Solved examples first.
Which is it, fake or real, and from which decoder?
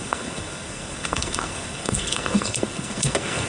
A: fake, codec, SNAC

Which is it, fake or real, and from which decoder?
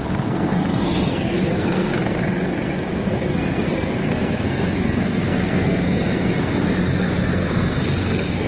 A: fake, codec, SNAC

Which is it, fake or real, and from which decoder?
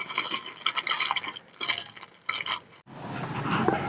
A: real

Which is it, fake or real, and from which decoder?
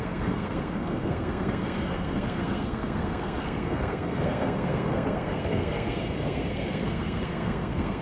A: fake, codec, SNAC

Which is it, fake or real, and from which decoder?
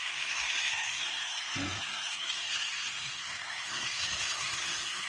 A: fake, codec, SNAC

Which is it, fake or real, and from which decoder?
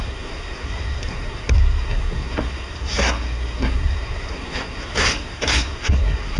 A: fake, codec, SNAC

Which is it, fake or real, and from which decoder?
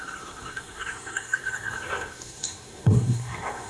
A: fake, codec, SNAC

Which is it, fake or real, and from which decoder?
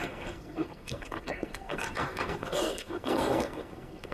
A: fake, codec, SNAC